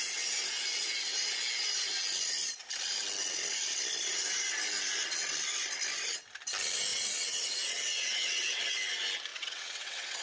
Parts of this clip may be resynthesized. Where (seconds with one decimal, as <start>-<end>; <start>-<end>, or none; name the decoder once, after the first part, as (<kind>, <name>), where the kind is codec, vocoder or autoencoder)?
6.9-8.6 (vocoder, WaveNeXt); 9.3-10.2